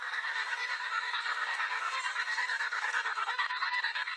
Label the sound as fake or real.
fake